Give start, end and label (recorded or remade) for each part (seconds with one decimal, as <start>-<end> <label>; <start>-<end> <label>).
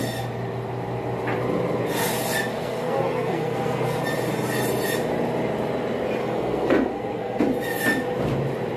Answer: 0.0-2.5 recorded; 2.5-4.0 remade; 4.0-6.2 recorded; 6.2-7.4 remade; 7.4-8.8 recorded